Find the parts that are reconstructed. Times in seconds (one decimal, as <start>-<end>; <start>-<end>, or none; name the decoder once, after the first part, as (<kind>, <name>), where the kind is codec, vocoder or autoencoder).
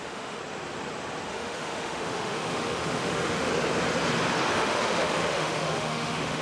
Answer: 0.0-0.4 (autoencoder, DAC-VAE); 1.3-3.5; 4.5-6.4